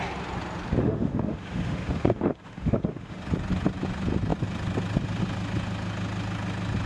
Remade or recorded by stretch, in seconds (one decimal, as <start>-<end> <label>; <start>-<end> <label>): 0.0-0.8 recorded; 0.8-3.2 remade; 3.2-6.9 recorded